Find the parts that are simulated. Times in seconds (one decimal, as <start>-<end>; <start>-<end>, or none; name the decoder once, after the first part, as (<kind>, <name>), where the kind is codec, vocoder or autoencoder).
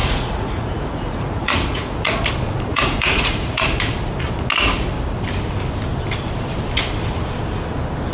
0.0-2.2 (vocoder, Vocos); 2.7-3.6